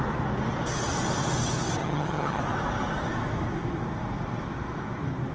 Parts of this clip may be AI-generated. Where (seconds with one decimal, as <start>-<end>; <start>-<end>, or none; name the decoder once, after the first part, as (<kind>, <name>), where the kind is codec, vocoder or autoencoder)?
1.8-2.4 (vocoder, HiFi-GAN)